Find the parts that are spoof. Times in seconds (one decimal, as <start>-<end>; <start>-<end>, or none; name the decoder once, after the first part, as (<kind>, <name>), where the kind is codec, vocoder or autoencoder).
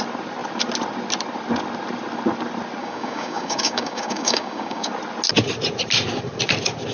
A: 2.8-4.9 (codec, DAC)